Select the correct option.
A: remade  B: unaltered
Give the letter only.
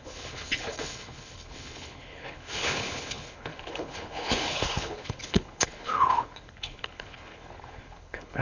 A